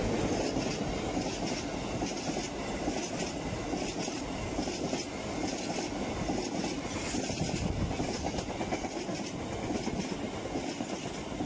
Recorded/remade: recorded